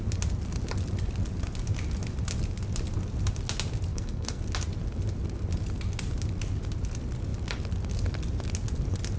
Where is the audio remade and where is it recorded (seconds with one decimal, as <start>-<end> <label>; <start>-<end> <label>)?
0.0-3.9 recorded; 3.9-4.4 remade; 4.4-9.2 recorded